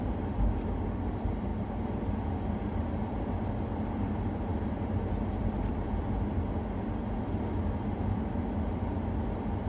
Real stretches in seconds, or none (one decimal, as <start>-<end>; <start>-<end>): 0.0-9.7